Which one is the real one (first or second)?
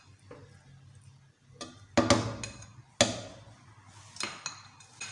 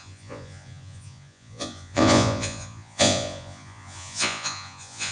first